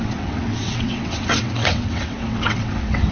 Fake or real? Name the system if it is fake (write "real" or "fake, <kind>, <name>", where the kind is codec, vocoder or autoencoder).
fake, vocoder, WaveNeXt